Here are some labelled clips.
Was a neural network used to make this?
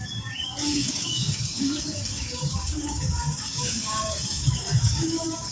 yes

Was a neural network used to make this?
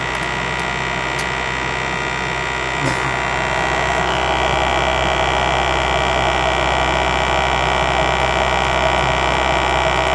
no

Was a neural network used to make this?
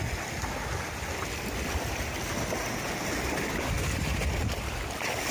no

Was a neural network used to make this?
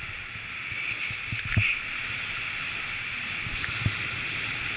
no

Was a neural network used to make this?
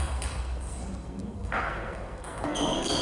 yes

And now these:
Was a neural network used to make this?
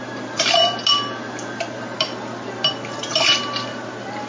no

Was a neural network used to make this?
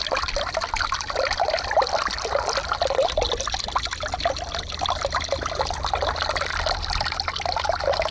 no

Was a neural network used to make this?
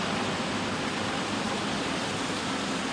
no